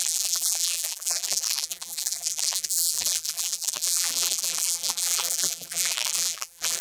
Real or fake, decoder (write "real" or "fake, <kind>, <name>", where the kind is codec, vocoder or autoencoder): fake, vocoder, BigVGAN v2